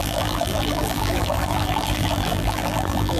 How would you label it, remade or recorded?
remade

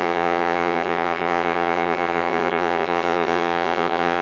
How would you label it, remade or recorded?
remade